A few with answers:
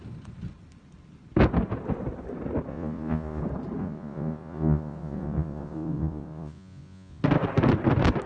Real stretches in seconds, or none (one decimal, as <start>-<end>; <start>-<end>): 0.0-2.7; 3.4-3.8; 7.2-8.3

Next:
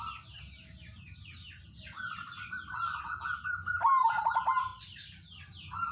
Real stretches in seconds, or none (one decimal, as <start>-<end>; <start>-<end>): 0.0-5.9

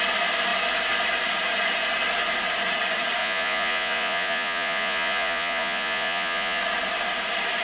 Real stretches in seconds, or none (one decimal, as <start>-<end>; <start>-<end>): 0.0-3.2; 6.6-7.6

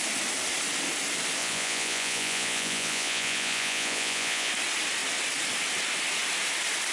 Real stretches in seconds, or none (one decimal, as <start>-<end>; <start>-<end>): 0.0-1.4; 4.5-6.9

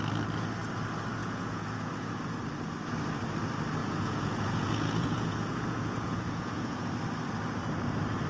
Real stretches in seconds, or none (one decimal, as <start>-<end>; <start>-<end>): 0.0-1.2; 2.2-3.8; 6.9-8.3